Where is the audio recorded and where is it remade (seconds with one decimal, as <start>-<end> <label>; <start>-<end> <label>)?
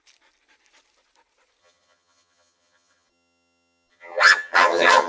0.0-1.6 recorded; 1.6-5.1 remade